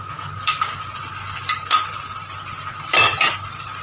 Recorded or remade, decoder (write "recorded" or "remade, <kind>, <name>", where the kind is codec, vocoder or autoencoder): remade, vocoder, BigVGAN v2